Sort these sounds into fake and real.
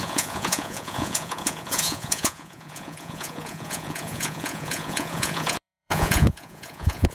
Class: fake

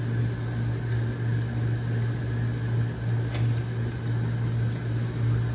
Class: real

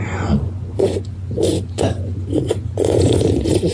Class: fake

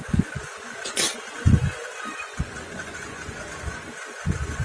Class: fake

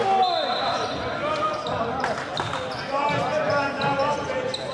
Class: real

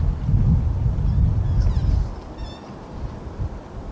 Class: real